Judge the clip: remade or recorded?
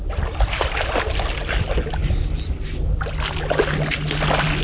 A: recorded